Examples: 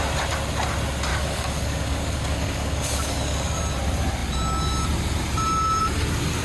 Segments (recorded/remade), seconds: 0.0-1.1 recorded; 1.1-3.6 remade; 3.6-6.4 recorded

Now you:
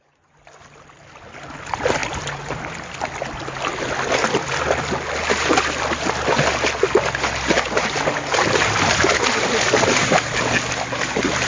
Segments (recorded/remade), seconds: 0.0-11.5 recorded

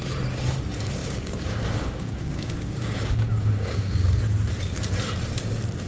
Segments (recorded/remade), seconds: 0.0-1.0 recorded; 1.0-4.2 remade; 4.2-5.9 recorded

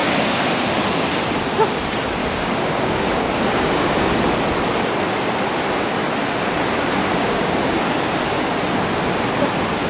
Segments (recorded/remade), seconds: 0.0-0.5 remade; 0.5-2.2 recorded; 2.2-4.1 remade; 4.1-7.0 recorded; 7.0-7.8 remade; 7.8-9.9 recorded

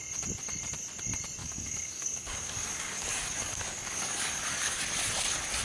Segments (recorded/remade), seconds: 0.0-1.4 recorded; 1.4-4.8 remade; 4.8-5.6 recorded

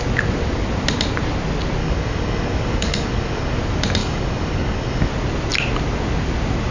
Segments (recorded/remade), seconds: 0.0-1.8 recorded; 1.8-3.6 remade; 3.6-4.0 recorded; 4.0-5.1 remade; 5.1-6.7 recorded

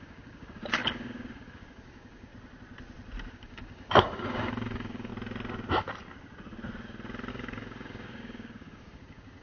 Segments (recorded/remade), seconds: 0.0-2.3 remade; 2.3-3.3 recorded; 3.3-5.1 remade; 5.1-7.3 recorded; 7.3-9.4 remade